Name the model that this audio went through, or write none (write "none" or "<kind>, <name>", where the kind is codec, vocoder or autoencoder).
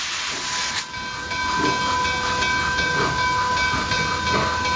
none